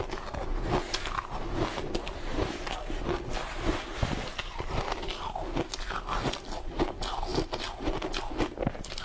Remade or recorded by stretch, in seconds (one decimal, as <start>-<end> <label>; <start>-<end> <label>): 0.0-9.0 recorded